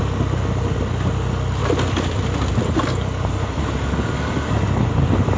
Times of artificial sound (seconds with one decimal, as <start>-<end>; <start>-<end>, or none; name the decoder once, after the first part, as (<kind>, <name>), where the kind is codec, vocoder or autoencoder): 1.6-2.5 (vocoder, BigVGAN v2)